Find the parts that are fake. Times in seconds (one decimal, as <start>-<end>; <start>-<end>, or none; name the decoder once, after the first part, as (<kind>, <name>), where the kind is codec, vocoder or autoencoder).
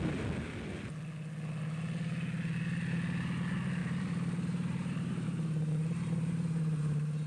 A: 3.8-7.3 (vocoder, BigVGAN v2)